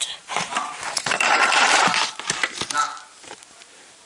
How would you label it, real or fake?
fake